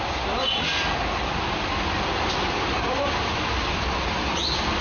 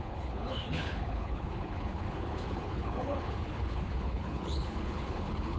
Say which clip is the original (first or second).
first